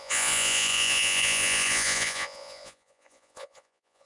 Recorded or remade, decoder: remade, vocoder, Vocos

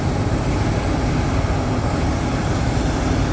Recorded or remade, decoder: recorded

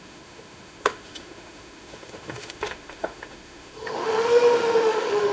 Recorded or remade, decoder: remade, autoencoder, DAC-VAE